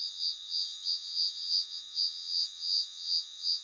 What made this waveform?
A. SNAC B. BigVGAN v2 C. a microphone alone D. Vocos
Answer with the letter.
D